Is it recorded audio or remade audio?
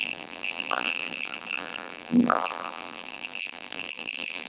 remade